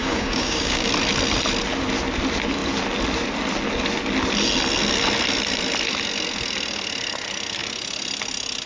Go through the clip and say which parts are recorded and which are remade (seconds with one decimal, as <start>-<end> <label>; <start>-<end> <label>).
0.0-0.9 remade; 0.9-8.7 recorded